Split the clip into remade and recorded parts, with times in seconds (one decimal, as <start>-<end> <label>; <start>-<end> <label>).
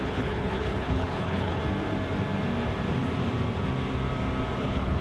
0.0-1.6 remade; 1.6-4.6 recorded; 4.6-5.0 remade